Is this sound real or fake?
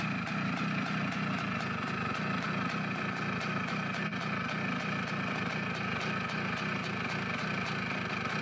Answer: real